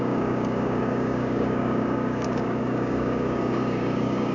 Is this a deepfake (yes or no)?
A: yes